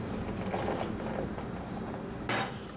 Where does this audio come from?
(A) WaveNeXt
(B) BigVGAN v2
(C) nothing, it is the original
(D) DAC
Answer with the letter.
C